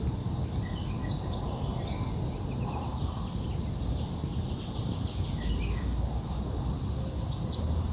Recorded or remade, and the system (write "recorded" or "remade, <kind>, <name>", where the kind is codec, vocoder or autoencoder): recorded